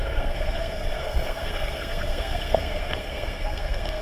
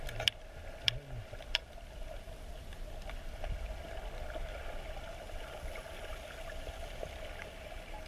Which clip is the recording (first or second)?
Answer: second